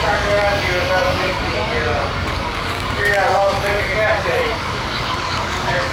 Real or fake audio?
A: fake